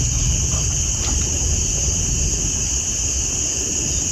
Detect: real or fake real